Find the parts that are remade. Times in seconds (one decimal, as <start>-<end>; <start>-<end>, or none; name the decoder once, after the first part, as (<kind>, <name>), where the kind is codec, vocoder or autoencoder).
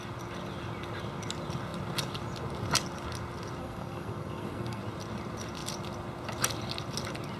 3.6-4.8 (codec, SNAC)